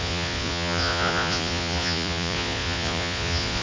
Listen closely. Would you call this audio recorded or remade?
remade